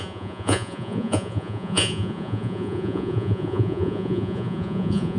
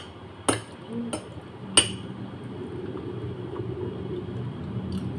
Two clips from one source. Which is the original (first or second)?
second